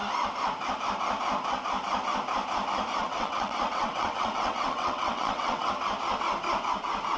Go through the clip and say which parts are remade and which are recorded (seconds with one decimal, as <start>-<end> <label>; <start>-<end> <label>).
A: 0.0-3.0 recorded; 3.0-5.7 remade; 5.7-7.2 recorded